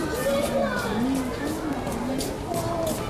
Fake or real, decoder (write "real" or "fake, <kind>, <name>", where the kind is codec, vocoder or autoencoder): real